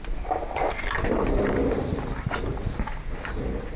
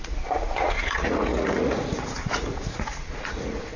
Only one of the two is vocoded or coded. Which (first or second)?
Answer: second